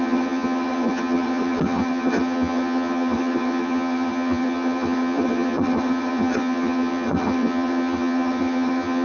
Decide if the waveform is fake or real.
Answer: fake